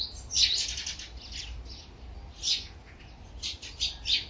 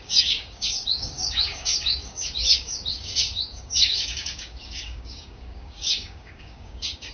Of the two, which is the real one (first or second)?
first